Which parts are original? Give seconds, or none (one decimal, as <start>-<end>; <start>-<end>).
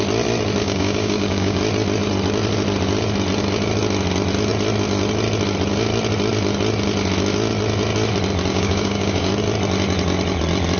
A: 0.0-0.6; 1.6-8.5; 9.3-10.8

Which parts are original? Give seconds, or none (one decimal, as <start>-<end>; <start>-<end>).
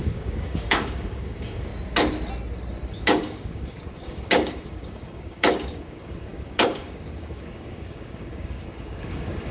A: 1.7-3.0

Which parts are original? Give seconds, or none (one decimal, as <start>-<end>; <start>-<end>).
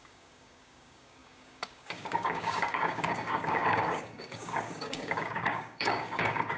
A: none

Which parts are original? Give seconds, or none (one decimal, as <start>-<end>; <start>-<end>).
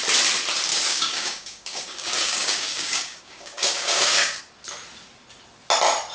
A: 0.0-0.7; 4.4-6.1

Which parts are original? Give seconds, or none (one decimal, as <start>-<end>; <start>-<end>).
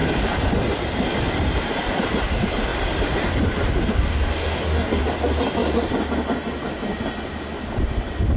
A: 0.0-3.9; 5.0-8.4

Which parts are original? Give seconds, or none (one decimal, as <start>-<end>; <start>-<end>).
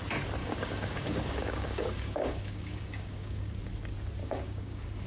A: 0.0-0.4; 3.5-4.2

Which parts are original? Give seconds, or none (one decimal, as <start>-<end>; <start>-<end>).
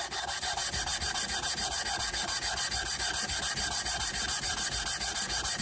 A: 0.0-5.6